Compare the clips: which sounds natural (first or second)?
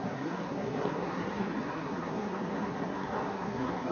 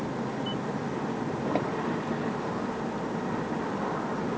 second